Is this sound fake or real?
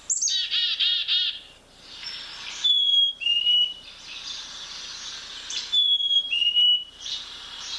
real